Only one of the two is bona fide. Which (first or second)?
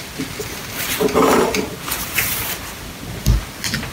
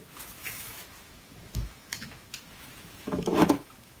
first